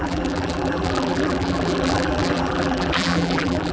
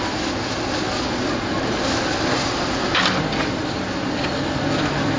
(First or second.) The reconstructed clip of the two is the first